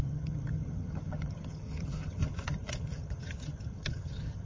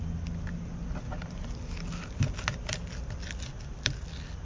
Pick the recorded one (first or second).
second